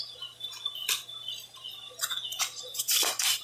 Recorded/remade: recorded